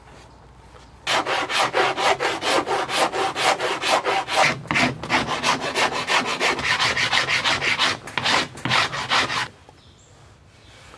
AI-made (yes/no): no